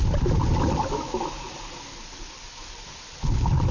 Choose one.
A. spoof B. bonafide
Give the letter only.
B